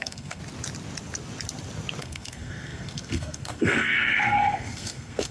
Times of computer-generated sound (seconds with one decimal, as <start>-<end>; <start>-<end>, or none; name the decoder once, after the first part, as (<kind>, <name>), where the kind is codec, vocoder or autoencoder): 0.0-0.4 (codec, SNAC); 2.0-5.3